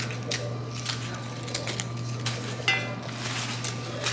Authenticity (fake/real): real